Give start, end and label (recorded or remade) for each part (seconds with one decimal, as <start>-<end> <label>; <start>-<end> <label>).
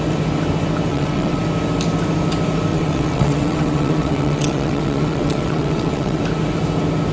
0.0-0.9 recorded; 0.9-1.4 remade; 1.4-2.7 recorded; 2.7-6.2 remade; 6.2-7.1 recorded